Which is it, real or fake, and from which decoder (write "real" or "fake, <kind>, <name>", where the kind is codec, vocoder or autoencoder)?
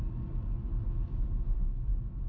real